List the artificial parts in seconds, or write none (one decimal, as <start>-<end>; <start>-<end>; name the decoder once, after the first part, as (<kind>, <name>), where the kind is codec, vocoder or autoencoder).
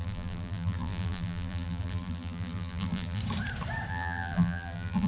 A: 0.0-3.2 (vocoder, BigVGAN v2); 3.9-5.1